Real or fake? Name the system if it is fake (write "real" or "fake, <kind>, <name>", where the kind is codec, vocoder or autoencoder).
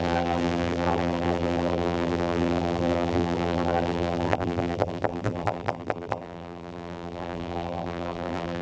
fake, vocoder, BigVGAN v2